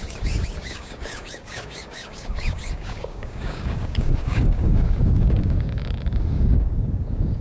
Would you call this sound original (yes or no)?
no